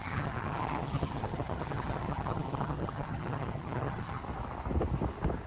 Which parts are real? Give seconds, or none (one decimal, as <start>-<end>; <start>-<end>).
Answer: 4.2-5.5